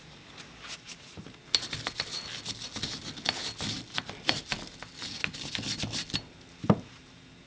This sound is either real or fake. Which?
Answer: real